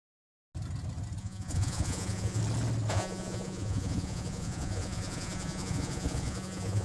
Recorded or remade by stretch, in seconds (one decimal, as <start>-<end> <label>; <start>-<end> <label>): 0.0-1.2 recorded; 1.2-2.4 remade; 2.4-2.9 recorded; 2.9-6.8 remade